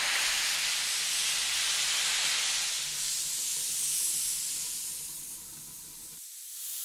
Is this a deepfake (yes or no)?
no